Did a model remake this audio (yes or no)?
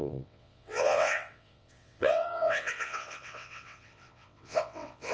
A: yes